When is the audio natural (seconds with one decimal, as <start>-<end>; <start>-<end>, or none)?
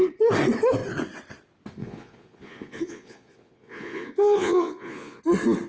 0.0-1.8; 5.2-5.7